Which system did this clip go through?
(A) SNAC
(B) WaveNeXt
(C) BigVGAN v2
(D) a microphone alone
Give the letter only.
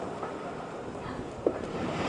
C